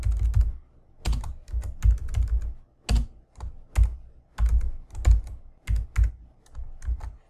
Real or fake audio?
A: real